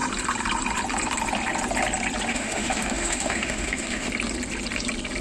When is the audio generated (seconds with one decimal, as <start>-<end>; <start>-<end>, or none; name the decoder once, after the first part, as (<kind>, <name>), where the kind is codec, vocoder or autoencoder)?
2.3-4.1 (autoencoder, DAC-VAE)